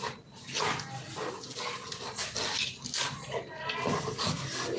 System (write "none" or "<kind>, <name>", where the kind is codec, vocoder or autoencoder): none